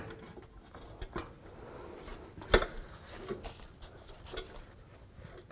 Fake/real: real